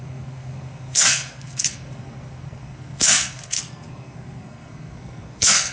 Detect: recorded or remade remade